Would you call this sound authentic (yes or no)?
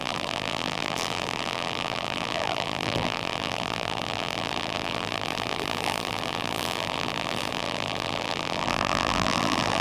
no